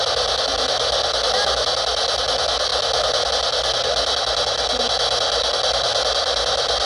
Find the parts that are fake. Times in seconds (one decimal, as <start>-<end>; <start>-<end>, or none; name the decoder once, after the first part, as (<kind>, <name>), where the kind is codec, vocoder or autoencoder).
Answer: none